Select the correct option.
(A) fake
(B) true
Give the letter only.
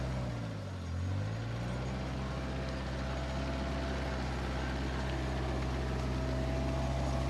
B